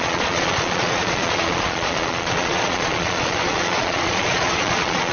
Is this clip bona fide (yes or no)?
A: no